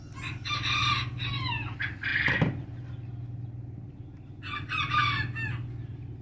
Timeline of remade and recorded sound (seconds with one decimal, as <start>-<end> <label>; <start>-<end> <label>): 0.0-6.2 recorded